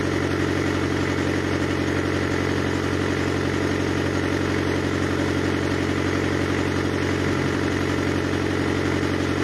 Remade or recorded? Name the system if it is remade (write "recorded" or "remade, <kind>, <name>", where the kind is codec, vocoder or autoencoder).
recorded